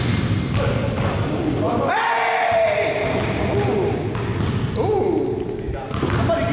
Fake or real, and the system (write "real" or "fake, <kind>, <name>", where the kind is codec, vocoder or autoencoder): real